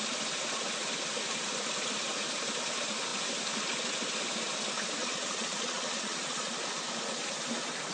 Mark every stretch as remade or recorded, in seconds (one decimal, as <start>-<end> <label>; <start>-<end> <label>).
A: 0.0-5.0 recorded; 5.0-6.5 remade; 6.5-7.9 recorded